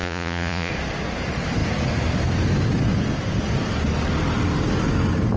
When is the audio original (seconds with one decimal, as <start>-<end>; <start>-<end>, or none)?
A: 0.7-5.4